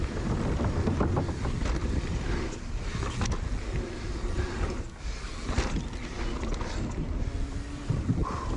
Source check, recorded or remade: recorded